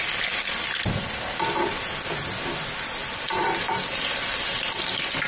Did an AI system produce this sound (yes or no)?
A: no